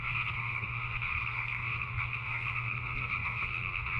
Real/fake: fake